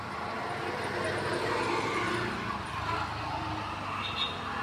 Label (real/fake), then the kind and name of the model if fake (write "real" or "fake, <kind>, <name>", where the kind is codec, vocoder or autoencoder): real